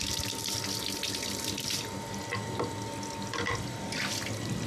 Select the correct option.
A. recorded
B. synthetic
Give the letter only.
A